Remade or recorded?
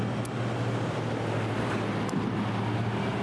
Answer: recorded